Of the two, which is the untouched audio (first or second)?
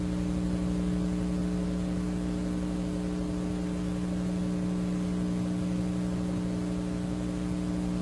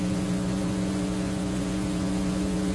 first